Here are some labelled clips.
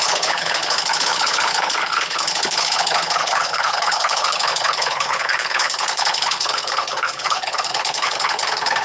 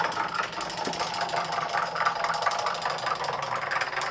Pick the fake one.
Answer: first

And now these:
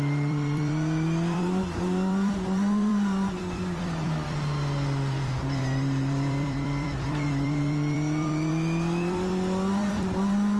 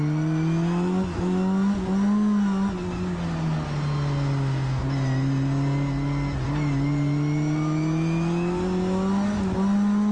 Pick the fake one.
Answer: first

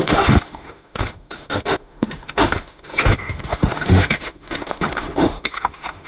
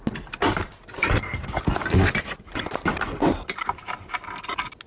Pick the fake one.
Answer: first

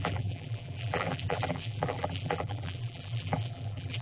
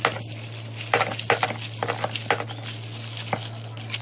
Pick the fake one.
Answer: first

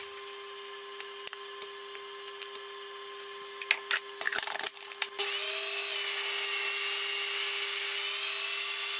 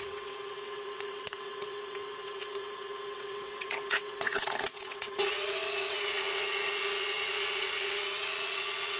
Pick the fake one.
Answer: second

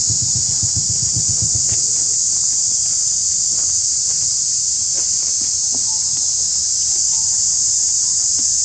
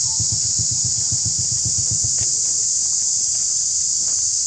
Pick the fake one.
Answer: second